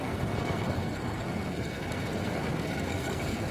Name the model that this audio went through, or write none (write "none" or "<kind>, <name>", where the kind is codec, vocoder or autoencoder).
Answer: codec, SNAC